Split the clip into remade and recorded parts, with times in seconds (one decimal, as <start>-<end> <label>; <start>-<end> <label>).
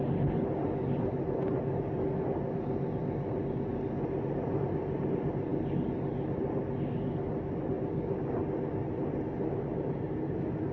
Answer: 0.0-10.7 recorded